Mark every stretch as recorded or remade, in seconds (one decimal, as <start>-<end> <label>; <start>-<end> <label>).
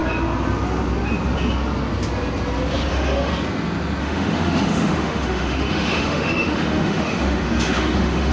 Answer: 0.0-2.9 recorded; 2.9-3.3 remade; 3.3-4.0 recorded; 4.0-8.3 remade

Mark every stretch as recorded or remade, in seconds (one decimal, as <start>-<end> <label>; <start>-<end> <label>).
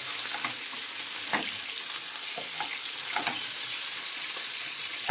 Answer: 0.0-3.1 recorded; 3.1-5.1 remade